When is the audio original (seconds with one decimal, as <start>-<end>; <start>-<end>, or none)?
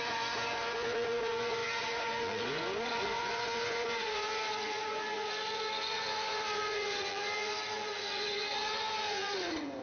none